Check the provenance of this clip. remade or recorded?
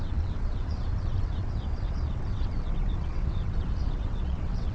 remade